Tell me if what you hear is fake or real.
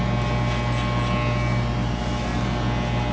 real